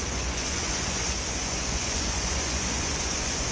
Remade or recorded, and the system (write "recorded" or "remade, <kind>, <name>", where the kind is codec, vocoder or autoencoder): remade, vocoder, Vocos